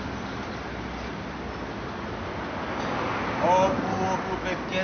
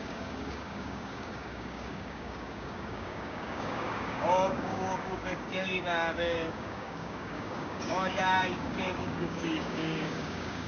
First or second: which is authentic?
first